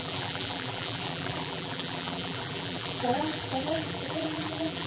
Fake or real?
fake